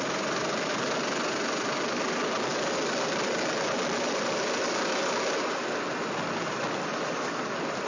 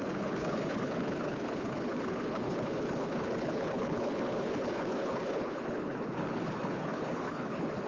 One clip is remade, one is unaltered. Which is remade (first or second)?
second